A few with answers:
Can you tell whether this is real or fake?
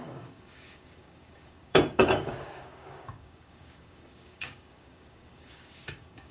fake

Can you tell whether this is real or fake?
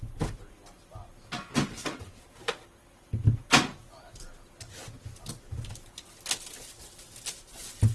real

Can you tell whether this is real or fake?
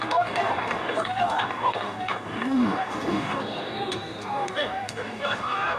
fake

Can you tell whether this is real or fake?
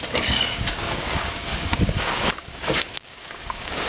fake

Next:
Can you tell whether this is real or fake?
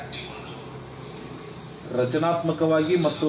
real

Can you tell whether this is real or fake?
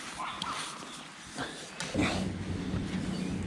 real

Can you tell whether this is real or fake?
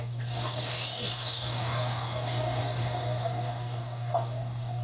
fake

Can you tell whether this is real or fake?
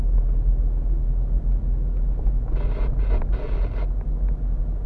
real